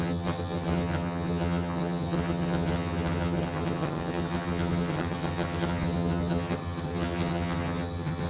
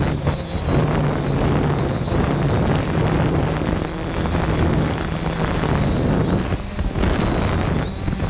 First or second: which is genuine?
second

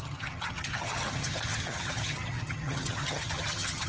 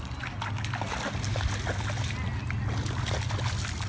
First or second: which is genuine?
second